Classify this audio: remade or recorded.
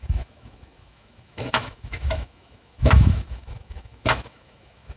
remade